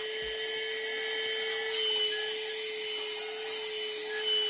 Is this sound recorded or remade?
recorded